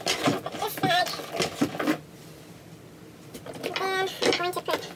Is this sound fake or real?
real